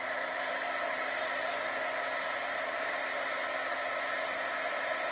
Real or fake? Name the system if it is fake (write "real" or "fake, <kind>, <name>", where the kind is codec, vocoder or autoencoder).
real